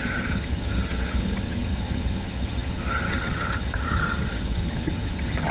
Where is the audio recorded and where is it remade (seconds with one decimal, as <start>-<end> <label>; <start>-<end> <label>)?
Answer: 0.0-5.5 remade